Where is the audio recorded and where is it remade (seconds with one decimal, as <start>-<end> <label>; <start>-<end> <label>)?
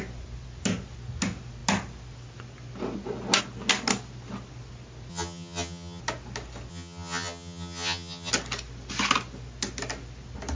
0.0-5.1 recorded; 5.1-6.0 remade; 6.0-6.7 recorded; 6.7-8.3 remade; 8.3-10.5 recorded